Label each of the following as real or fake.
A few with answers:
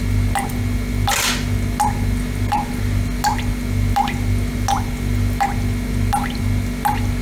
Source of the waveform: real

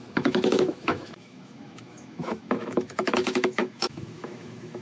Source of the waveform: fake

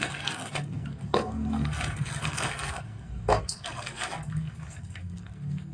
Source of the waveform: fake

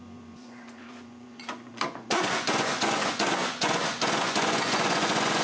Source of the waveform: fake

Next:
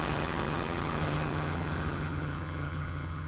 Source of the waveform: fake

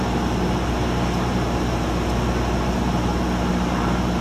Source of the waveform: real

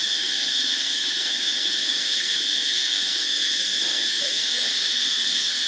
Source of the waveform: fake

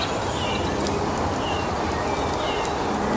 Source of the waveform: real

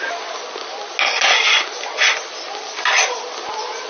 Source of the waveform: real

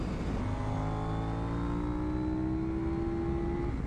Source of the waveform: real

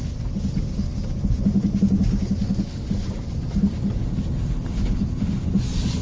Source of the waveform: real